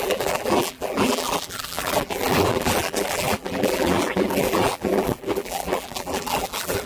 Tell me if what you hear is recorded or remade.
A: remade